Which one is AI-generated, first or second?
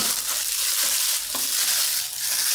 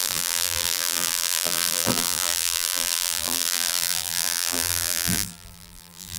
second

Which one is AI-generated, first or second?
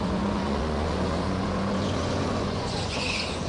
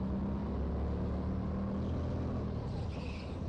first